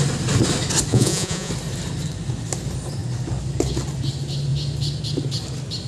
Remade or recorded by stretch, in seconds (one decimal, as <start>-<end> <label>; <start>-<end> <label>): 0.0-0.9 recorded; 0.9-1.5 remade; 1.5-5.9 recorded